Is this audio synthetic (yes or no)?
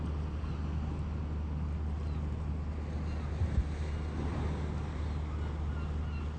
no